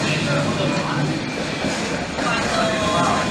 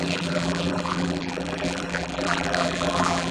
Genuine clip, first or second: first